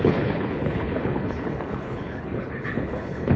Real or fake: fake